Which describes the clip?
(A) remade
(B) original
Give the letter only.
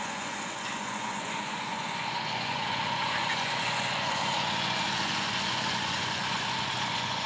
A